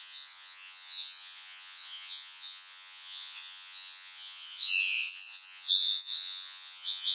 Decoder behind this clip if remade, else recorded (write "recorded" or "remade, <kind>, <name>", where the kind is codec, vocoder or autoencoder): remade, vocoder, Vocos